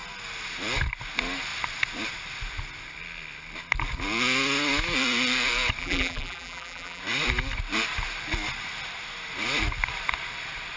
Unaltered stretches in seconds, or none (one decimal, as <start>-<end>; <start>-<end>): 0.0-5.8; 7.0-10.8